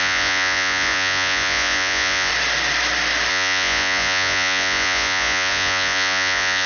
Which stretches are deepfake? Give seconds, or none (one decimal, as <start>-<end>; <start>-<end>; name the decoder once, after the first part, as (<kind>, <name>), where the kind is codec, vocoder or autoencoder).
0.0-2.3 (vocoder, Vocos); 3.3-6.7